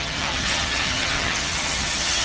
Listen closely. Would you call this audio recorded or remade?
remade